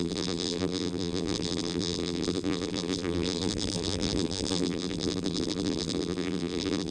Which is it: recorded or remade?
remade